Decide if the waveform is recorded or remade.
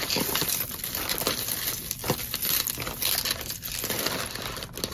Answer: recorded